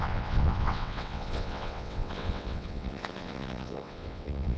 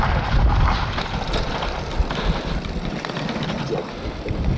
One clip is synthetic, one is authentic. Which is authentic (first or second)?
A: second